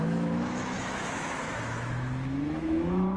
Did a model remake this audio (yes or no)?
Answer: yes